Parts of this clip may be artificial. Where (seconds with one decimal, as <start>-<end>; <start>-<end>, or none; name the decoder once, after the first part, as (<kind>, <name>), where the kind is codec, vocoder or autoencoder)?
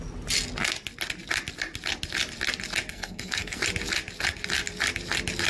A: 2.9-3.6 (codec, SNAC)